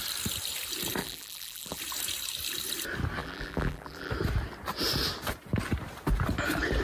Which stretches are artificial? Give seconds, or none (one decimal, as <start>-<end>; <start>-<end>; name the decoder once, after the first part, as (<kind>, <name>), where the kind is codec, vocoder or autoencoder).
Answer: 1.0-1.8 (vocoder, BigVGAN v2); 3.2-4.1